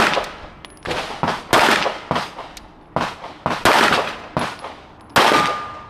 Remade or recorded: recorded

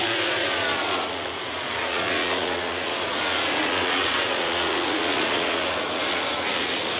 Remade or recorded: remade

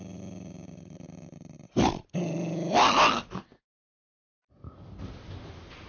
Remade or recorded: recorded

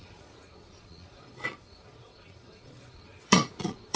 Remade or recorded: remade